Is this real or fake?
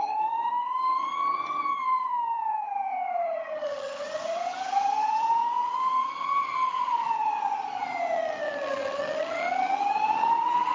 fake